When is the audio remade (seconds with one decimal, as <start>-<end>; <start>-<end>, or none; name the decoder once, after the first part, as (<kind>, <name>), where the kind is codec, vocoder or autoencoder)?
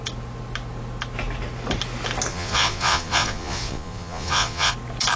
2.3-4.7 (vocoder, Vocos)